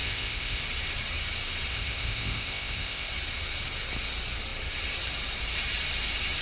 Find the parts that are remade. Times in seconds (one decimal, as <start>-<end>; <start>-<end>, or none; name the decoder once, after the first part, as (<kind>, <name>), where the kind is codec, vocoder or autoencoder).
0.0-0.6 (codec, ZipCodec); 1.7-3.1